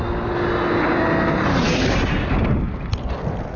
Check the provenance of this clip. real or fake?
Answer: real